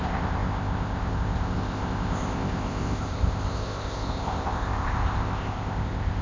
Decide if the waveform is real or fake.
fake